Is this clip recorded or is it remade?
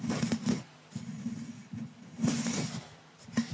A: remade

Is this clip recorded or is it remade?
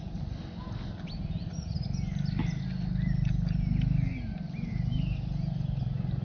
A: recorded